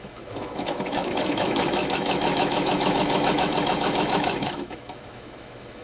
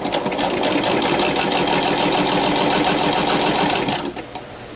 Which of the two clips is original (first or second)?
second